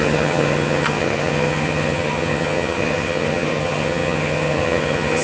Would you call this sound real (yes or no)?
no